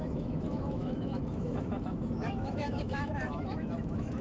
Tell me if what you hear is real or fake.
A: fake